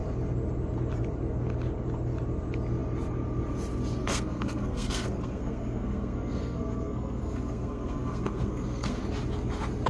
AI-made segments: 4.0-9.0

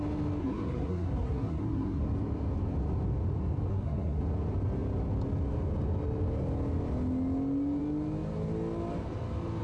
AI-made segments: 0.4-2.0; 3.7-4.2